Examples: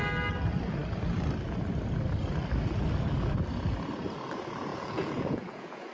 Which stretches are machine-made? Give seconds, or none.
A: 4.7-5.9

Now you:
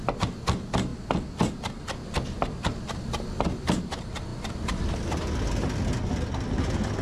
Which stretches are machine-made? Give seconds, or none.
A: none

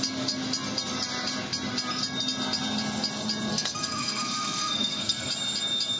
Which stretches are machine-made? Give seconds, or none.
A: 3.5-5.3

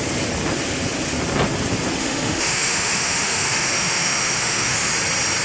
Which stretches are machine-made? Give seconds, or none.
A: 2.0-4.9